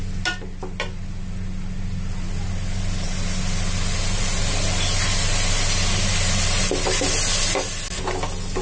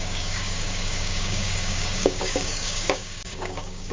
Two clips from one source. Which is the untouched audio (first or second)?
first